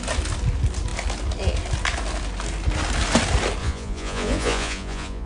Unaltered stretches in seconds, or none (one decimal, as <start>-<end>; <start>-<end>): 0.0-3.6